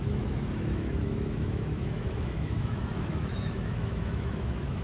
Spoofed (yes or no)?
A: yes